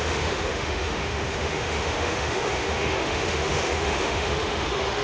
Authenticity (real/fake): fake